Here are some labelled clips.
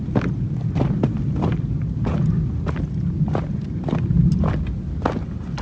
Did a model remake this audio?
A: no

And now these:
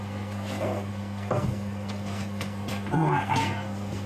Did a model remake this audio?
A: yes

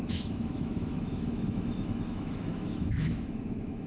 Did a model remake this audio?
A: yes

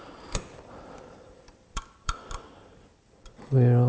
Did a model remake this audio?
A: yes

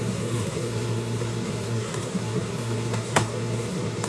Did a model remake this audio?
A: yes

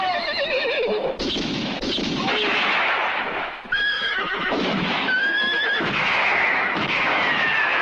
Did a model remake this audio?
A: yes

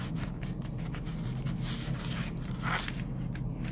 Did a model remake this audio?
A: no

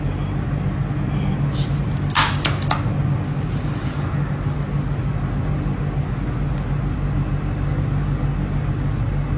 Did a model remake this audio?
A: no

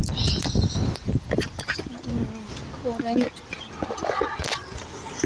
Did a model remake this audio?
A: no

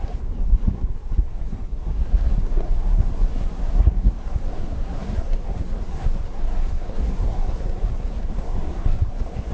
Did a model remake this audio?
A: yes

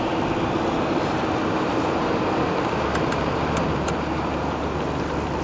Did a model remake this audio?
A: no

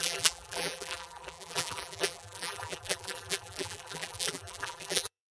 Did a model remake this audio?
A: yes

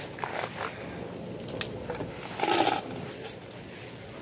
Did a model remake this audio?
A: no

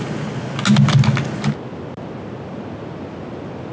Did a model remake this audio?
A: no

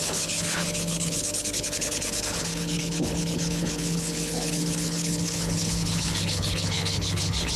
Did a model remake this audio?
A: yes